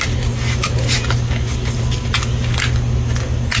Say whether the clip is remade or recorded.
recorded